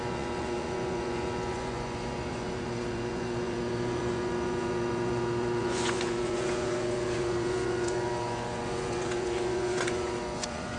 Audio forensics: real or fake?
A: fake